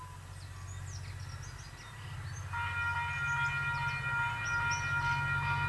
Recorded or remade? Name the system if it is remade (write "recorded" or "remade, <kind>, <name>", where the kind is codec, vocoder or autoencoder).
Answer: recorded